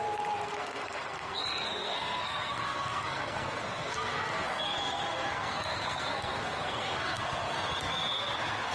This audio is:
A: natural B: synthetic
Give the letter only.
B